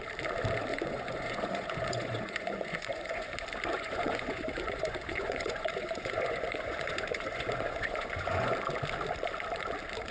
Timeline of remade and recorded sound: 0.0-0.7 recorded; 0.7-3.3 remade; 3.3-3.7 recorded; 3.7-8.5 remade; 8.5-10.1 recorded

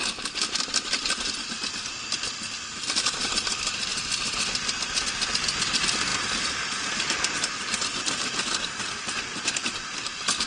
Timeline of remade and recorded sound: 0.0-10.5 recorded